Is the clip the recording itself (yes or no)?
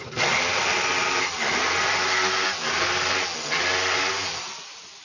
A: yes